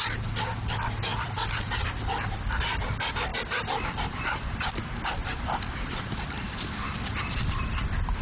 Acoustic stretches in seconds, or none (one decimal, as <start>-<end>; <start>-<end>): 0.0-1.1; 2.1-3.3; 3.9-5.2; 7.7-8.2